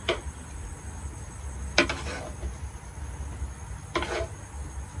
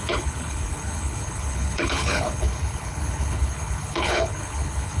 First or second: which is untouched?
first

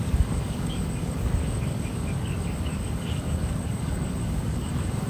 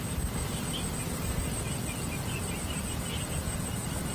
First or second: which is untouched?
second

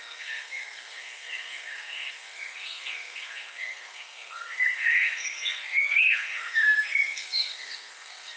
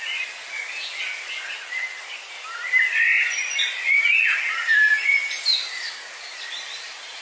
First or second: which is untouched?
second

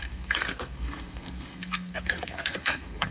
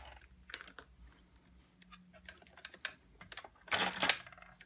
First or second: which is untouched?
second